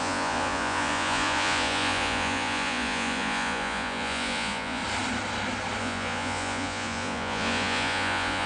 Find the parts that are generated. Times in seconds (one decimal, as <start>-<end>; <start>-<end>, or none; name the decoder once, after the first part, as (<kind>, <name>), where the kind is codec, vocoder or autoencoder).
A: 0.0-4.8 (vocoder, Vocos); 5.8-8.5